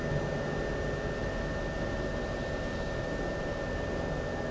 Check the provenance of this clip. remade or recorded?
recorded